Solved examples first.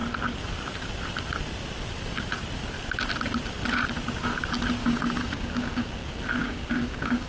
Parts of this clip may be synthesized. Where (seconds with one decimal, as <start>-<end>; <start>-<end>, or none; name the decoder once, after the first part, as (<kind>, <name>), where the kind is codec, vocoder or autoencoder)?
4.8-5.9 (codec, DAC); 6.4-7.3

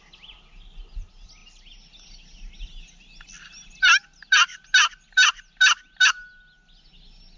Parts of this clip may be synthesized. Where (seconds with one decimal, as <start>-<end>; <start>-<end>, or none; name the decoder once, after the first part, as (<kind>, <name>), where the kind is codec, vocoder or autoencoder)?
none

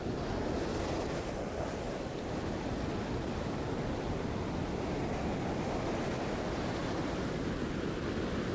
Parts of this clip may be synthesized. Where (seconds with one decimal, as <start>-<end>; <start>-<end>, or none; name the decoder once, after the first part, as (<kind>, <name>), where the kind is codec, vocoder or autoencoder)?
0.7-2.9 (vocoder, BigVGAN v2); 6.8-7.3

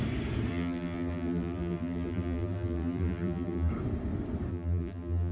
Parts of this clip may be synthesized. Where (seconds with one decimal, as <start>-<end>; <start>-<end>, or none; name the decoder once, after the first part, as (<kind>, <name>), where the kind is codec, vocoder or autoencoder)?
0.5-3.7 (vocoder, BigVGAN v2); 4.5-5.3

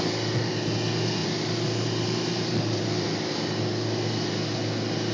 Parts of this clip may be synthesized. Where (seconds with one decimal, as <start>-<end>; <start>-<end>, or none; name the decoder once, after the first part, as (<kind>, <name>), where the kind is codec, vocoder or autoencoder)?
1.2-3.7 (vocoder, BigVGAN v2)

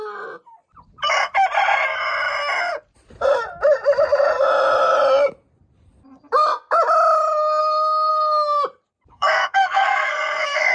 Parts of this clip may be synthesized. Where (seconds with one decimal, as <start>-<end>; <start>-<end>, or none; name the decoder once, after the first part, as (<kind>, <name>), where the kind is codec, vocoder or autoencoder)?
7.6-8.1 (codec, SNAC); 9.1-10.7